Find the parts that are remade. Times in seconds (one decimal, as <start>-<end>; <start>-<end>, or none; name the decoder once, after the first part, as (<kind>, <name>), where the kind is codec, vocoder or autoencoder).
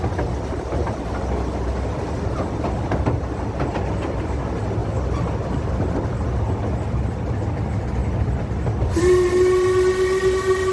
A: none